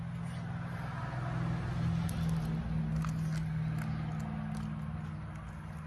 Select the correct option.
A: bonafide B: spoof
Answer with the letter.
A